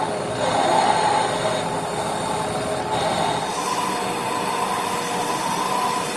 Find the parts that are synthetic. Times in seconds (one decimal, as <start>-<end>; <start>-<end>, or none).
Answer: none